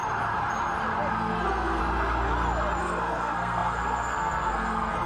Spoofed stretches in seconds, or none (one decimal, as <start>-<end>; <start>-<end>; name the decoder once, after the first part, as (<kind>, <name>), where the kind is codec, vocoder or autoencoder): 1.1-1.8 (codec, SNAC); 2.8-5.1